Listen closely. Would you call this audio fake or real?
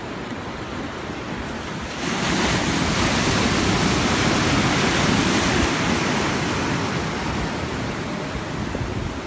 real